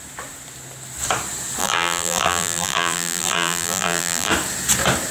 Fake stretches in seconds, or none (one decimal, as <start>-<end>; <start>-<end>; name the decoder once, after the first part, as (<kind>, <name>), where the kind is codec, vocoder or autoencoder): 1.6-4.3 (vocoder, BigVGAN v2)